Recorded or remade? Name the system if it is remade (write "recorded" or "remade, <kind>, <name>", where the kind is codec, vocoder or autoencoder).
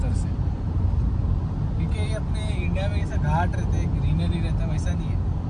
recorded